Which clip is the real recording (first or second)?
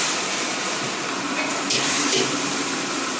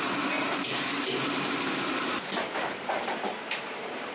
first